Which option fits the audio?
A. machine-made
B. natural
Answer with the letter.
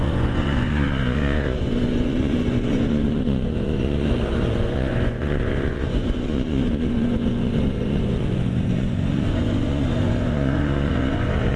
A